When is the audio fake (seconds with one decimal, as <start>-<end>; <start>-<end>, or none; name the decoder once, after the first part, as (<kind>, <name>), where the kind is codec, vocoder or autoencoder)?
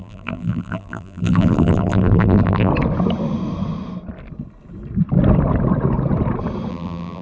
0.0-2.7 (vocoder, BigVGAN v2); 6.7-7.2